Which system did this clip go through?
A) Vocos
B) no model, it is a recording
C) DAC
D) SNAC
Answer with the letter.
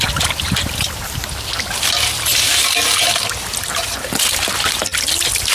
B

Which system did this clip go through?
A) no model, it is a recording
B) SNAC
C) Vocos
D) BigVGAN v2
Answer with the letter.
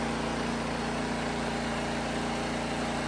A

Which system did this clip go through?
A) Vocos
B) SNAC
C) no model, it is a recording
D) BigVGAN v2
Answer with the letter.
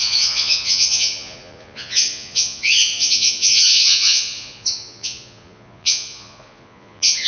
A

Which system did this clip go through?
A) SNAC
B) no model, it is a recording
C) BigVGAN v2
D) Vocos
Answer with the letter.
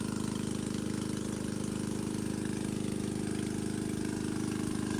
B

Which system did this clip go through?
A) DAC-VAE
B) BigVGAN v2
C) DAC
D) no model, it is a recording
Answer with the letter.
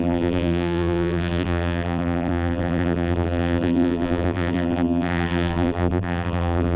B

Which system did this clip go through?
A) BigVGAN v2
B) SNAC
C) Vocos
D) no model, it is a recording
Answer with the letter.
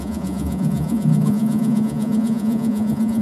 C